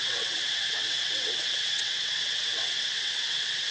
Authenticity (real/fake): fake